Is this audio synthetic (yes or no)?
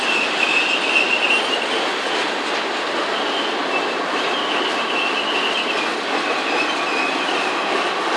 no